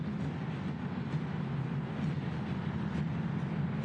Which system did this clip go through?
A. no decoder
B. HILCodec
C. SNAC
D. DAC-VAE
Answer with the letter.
A